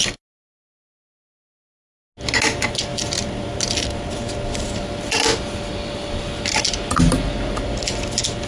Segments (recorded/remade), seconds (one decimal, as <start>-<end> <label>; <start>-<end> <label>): 0.0-2.9 recorded; 2.9-5.2 remade; 5.2-8.5 recorded